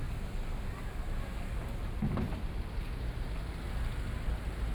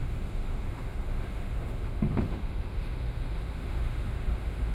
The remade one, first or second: second